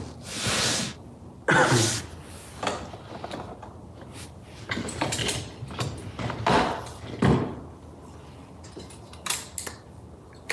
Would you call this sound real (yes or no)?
yes